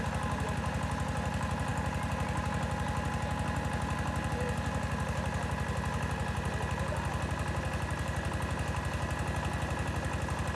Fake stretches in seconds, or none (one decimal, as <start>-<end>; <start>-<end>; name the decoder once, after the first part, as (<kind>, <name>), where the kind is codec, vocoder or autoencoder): none